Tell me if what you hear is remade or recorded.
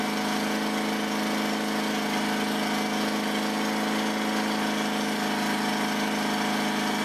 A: recorded